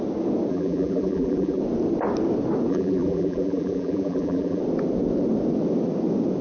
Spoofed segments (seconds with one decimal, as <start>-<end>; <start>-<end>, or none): 0.5-1.6; 2.7-4.6